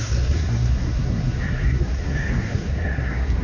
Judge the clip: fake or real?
fake